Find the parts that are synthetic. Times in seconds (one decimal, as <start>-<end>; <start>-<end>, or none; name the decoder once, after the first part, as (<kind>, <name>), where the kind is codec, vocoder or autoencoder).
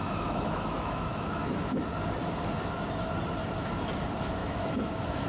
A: 0.0-1.8 (autoencoder, DAC-VAE); 4.4-5.3